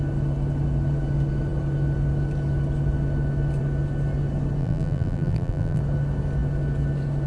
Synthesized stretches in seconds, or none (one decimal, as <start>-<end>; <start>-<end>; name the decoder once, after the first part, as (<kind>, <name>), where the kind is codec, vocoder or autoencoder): 4.6-5.8 (vocoder, BigVGAN v2)